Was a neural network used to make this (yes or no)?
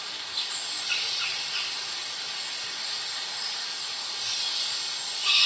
no